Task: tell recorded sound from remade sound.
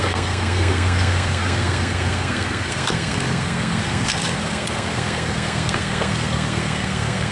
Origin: remade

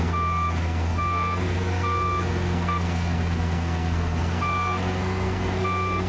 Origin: remade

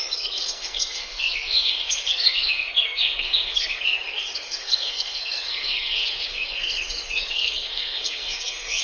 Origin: remade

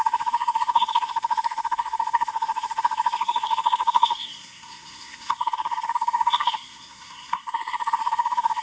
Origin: remade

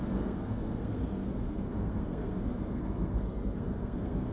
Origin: remade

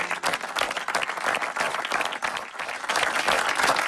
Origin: recorded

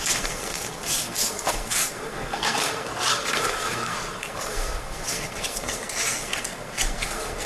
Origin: remade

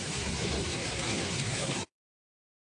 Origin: remade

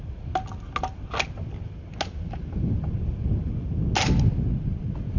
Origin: recorded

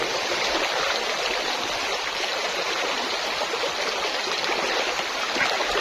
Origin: recorded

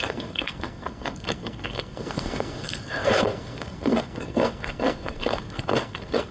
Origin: remade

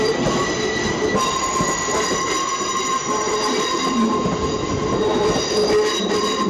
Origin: recorded